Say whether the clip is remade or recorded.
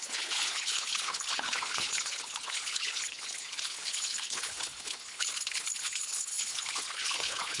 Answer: remade